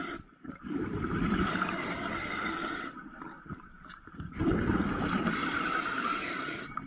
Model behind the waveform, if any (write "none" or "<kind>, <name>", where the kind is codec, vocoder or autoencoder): vocoder, BigVGAN v2